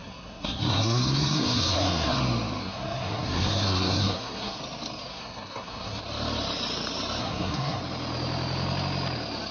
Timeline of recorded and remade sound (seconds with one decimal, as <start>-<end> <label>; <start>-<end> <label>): 0.0-2.2 remade; 2.2-2.6 recorded; 2.6-4.6 remade; 4.6-5.1 recorded; 5.1-6.0 remade; 6.0-7.2 recorded; 7.2-7.8 remade; 7.8-9.5 recorded